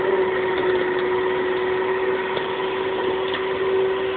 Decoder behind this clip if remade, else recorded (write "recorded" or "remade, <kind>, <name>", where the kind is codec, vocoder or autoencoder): recorded